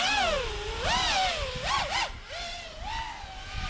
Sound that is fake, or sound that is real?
real